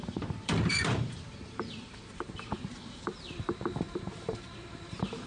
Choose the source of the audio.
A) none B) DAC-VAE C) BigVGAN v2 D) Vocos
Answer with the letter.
C